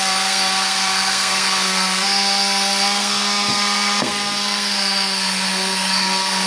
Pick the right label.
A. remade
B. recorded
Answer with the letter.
A